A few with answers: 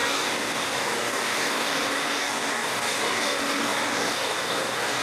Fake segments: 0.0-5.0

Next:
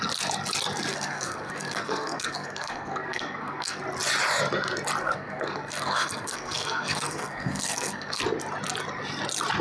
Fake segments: 0.9-3.8; 5.0-8.2

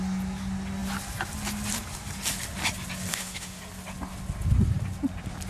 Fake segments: 3.1-3.6